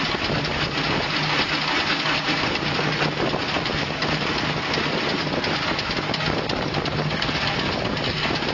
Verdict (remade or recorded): recorded